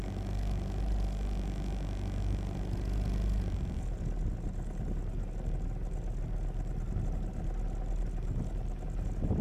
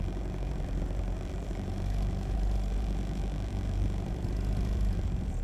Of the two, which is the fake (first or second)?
second